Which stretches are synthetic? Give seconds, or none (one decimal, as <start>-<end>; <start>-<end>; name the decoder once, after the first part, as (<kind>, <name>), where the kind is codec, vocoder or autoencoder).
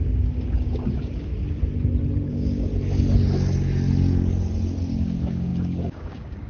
0.0-1.3 (codec, DAC); 2.3-2.7; 4.9-6.5